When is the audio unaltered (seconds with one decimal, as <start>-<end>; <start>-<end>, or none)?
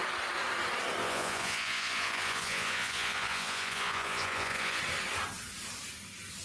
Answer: 0.0-1.0; 4.8-6.4